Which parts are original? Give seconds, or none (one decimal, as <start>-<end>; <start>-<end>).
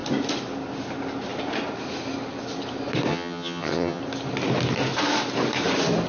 0.0-3.1; 4.0-6.1